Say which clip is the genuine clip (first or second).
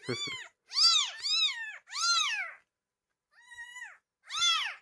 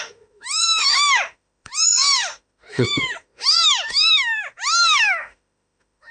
first